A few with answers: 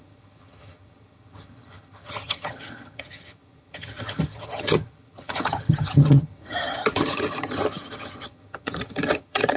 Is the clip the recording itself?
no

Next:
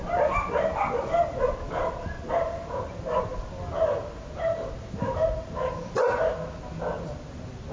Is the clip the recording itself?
yes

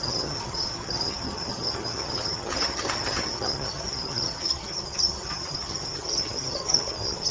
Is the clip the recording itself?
no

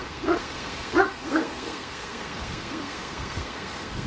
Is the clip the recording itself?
no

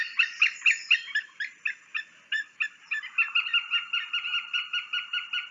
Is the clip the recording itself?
yes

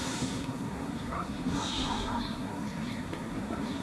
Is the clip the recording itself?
no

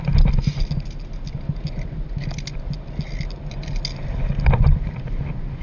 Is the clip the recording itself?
yes